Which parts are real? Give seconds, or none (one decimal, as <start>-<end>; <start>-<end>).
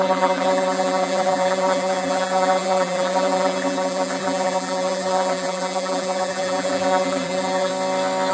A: 7.7-8.3